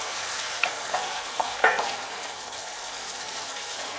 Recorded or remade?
remade